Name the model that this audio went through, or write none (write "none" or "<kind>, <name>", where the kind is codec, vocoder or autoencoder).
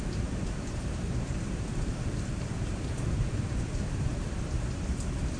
vocoder, BigVGAN v2